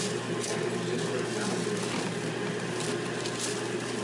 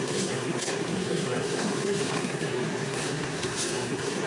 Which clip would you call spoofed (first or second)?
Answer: second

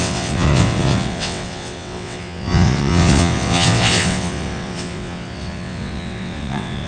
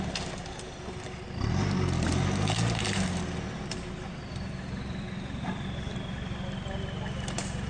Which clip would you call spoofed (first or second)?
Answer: first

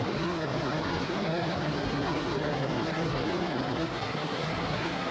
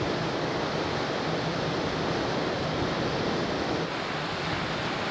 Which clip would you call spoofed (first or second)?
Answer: first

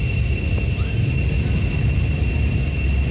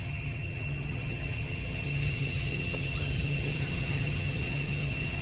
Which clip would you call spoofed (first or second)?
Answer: second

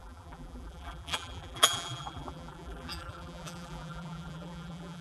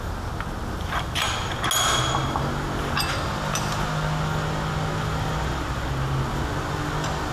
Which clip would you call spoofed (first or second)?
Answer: first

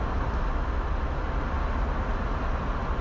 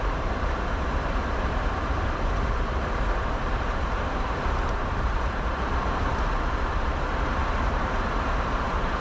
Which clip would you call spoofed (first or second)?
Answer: second